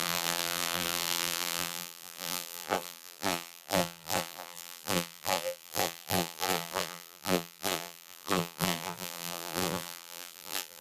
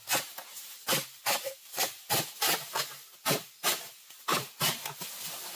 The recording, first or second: second